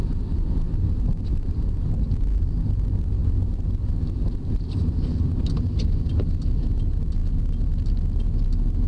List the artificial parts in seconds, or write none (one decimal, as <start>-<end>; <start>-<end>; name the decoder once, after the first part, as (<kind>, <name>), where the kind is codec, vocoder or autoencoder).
none